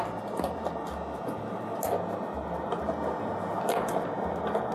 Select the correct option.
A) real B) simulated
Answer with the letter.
A